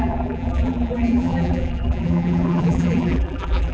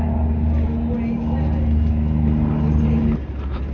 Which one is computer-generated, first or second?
first